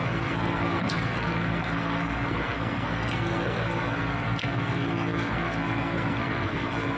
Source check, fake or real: fake